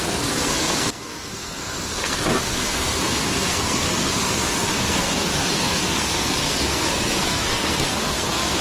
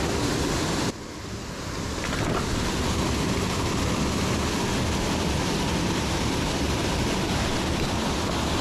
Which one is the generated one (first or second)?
first